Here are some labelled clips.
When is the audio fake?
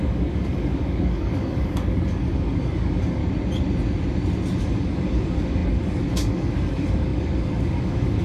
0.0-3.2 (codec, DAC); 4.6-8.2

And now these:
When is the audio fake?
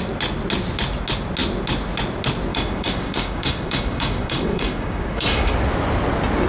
2.5-5.5 (codec, DAC)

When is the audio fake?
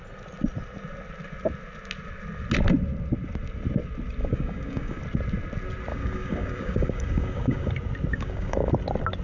4.2-5.0 (codec, DAC); 5.9-7.7; 8.1-8.7